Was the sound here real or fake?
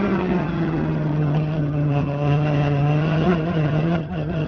fake